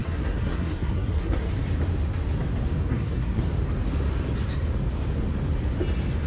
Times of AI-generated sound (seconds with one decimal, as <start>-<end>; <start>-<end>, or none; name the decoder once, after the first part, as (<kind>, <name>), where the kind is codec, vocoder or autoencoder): 0.0-1.5 (codec, SNAC); 2.9-3.4